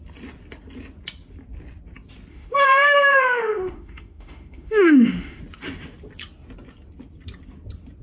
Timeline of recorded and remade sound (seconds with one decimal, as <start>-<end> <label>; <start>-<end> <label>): 0.0-2.3 recorded; 2.3-5.4 remade; 5.4-8.0 recorded

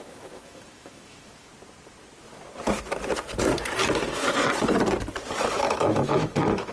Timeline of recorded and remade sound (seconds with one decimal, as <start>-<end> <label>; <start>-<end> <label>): 0.0-1.5 remade; 1.5-5.5 recorded; 5.5-6.7 remade

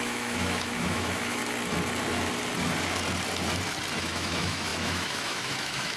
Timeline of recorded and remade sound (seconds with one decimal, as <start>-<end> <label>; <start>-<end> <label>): 0.0-1.4 remade; 1.4-4.0 recorded; 4.0-6.0 remade